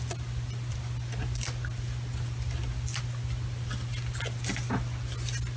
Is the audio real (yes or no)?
yes